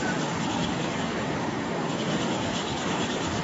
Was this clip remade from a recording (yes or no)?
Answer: yes